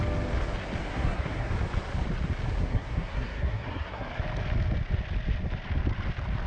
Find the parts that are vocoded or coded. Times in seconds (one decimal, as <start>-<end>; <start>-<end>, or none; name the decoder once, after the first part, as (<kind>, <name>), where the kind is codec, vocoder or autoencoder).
0.8-1.5 (codec, SNAC); 2.6-4.2